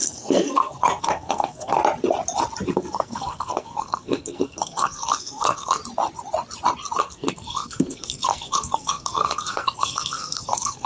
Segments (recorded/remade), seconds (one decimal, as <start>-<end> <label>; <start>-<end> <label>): 0.0-1.8 remade; 1.8-2.7 recorded; 2.7-5.8 remade; 5.8-7.0 recorded; 7.0-10.9 remade